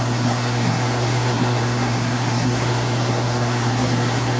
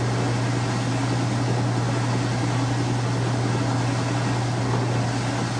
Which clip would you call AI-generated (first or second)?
first